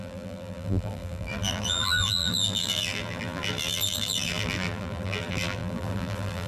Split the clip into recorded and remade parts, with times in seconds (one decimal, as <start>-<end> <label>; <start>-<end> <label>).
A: 0.0-6.5 remade